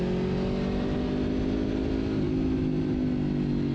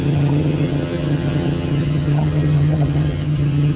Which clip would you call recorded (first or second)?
first